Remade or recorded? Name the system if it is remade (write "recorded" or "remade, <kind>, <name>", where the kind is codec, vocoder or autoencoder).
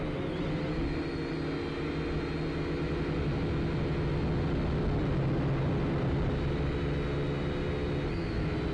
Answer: recorded